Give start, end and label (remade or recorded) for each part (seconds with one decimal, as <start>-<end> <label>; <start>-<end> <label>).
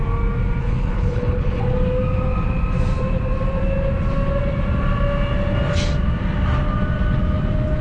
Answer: 0.0-0.6 recorded; 0.6-1.6 remade; 1.6-7.8 recorded